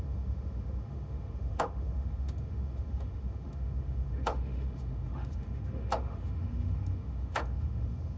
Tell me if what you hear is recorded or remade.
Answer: remade